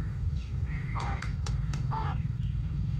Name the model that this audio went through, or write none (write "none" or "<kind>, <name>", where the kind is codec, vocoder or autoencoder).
codec, DAC